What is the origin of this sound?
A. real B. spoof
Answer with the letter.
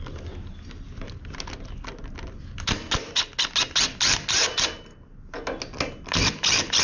A